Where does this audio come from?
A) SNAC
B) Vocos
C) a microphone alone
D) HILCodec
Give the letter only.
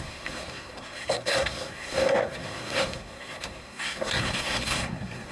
A